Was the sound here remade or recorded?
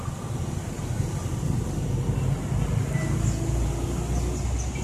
recorded